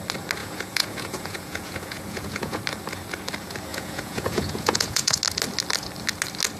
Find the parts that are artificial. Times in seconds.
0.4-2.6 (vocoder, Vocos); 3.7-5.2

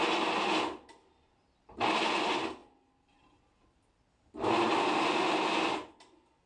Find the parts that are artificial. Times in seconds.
none

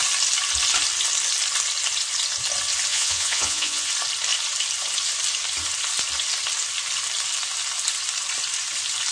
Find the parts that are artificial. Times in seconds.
2.9-3.9 (vocoder, Vocos)